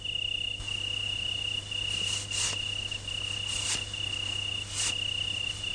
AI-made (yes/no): no